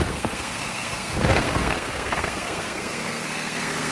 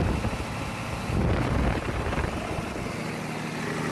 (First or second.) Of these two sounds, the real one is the second